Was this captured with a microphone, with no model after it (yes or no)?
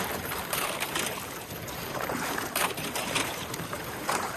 no